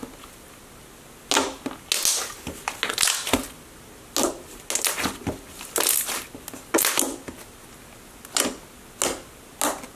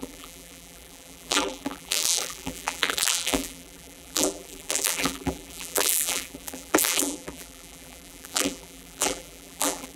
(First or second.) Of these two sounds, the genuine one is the first